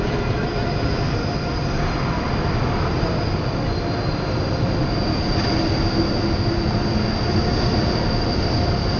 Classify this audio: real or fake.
real